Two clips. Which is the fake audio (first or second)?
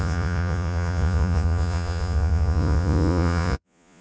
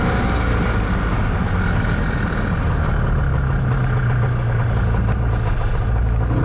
first